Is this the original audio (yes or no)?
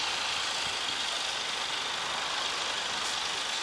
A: yes